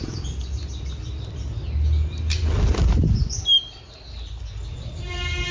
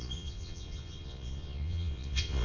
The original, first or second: first